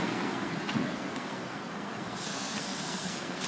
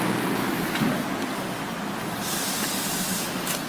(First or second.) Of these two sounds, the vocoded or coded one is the first